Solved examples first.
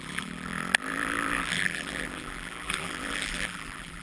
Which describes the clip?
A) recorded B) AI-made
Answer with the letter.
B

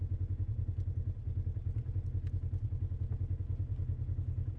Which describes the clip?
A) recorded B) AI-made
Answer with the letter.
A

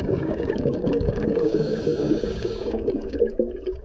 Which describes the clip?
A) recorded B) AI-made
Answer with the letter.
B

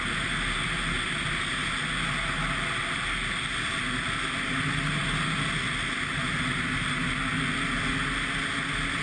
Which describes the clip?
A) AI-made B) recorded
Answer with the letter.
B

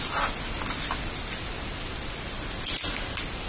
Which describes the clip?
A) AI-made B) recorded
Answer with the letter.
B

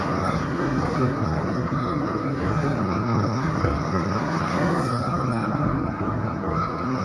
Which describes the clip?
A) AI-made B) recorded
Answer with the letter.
A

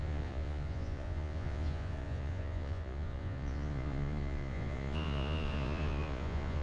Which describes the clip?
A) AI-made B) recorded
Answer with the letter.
A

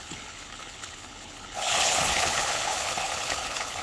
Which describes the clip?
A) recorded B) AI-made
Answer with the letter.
B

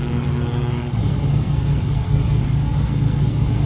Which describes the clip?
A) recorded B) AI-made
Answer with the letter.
B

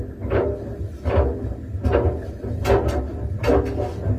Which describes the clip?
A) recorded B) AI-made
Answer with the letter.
A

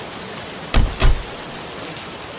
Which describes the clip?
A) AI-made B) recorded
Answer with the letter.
B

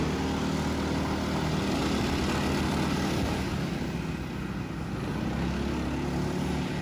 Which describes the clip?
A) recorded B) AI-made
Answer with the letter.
A